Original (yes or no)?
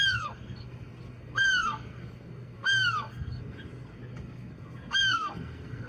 no